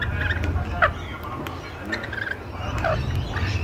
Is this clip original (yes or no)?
yes